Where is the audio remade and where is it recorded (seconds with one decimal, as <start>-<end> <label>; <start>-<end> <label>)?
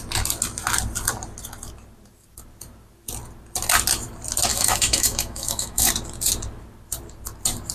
0.0-4.5 recorded; 4.5-5.9 remade; 5.9-7.7 recorded